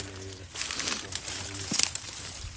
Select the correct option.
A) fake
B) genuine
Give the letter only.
B